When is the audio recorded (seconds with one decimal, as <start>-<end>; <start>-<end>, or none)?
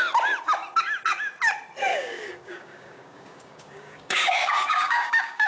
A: 0.0-1.9